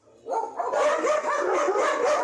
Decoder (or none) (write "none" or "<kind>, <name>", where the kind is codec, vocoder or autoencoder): none